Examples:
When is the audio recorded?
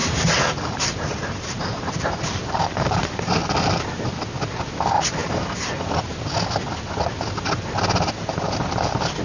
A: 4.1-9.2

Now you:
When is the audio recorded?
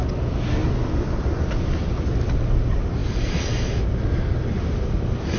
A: 0.0-0.6; 2.3-5.4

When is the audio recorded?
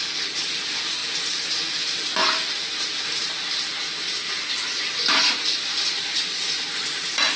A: 2.2-6.6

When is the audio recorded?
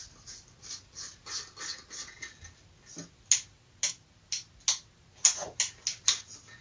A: 0.0-6.6